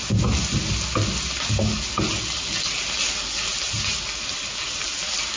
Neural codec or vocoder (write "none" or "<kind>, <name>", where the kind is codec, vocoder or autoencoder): none